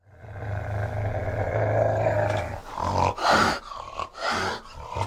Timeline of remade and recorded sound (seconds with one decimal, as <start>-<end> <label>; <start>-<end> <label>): 0.0-5.1 recorded